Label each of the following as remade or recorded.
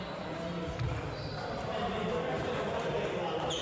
recorded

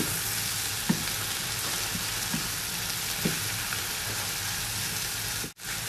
recorded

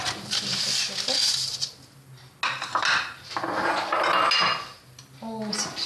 recorded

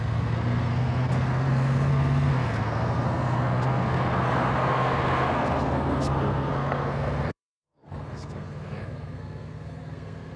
remade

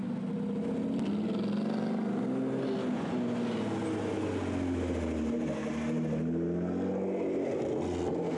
recorded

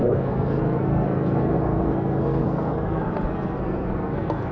remade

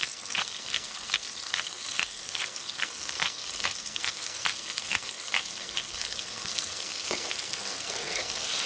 remade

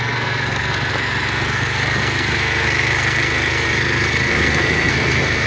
remade